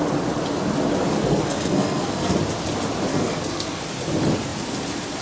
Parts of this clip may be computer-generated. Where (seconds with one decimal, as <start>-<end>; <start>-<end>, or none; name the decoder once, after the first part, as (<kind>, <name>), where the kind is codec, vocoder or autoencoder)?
1.2-2.4 (codec, SNAC); 3.1-3.8